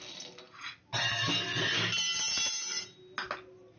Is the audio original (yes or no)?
yes